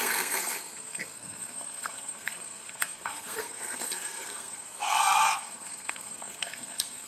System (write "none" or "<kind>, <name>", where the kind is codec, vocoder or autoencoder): codec, SNAC